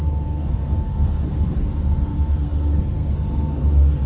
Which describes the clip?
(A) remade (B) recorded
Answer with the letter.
A